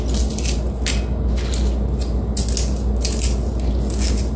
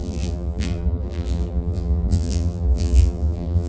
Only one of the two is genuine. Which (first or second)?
first